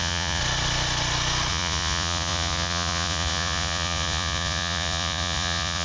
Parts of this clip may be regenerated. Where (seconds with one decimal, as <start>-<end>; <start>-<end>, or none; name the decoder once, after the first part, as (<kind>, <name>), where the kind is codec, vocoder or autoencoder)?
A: 0.0-0.4 (vocoder, Vocos); 1.5-5.8